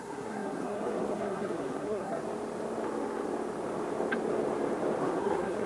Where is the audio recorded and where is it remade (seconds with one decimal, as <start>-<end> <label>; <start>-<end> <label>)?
0.0-2.2 remade; 2.2-5.0 recorded; 5.0-5.7 remade